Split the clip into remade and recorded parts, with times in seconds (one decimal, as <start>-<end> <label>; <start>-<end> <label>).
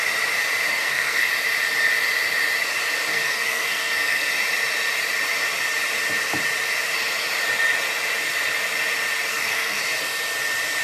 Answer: 0.0-0.7 recorded; 0.7-1.3 remade; 1.3-3.1 recorded; 3.1-4.3 remade; 4.3-9.3 recorded; 9.3-9.8 remade; 9.8-10.8 recorded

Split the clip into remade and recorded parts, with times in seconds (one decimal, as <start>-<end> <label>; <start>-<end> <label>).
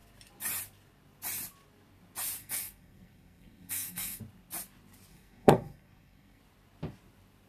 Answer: 0.0-2.4 recorded; 2.4-4.2 remade; 4.2-5.1 recorded; 5.1-6.4 remade; 6.4-7.5 recorded